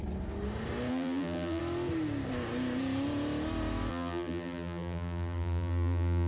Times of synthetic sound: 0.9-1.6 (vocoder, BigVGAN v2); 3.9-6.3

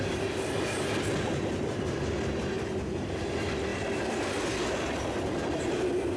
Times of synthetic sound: none

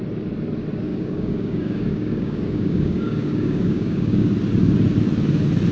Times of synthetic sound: 0.9-4.3 (codec, DAC)